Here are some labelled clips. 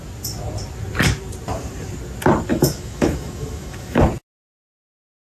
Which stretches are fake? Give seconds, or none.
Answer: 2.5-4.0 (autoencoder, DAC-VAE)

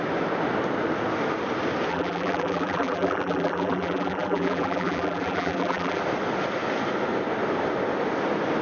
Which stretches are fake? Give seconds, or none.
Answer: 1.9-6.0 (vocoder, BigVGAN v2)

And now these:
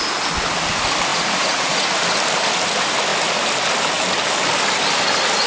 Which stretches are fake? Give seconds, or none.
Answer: 1.1-2.0 (vocoder, Vocos)